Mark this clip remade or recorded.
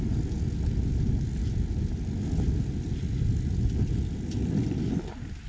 recorded